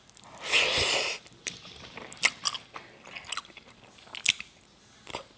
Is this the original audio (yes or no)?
yes